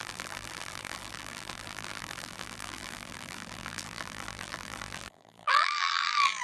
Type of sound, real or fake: fake